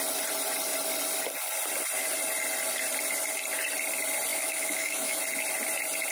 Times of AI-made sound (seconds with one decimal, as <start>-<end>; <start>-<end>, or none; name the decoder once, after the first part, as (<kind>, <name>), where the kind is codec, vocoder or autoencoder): 4.3-5.2 (autoencoder, DAC-VAE)